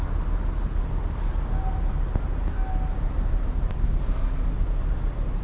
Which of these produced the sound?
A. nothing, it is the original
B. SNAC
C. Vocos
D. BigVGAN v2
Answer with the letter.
A